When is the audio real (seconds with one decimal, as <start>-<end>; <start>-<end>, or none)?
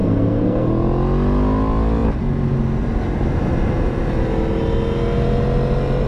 0.7-6.1